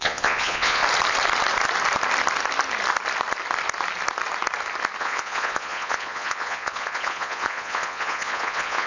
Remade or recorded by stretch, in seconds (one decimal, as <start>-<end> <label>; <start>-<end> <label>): 0.0-0.8 remade; 0.8-5.0 recorded; 5.0-8.9 remade